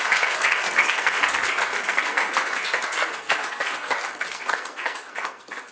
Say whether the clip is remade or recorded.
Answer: remade